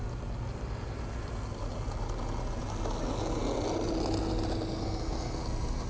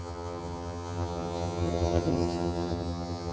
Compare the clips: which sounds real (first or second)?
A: first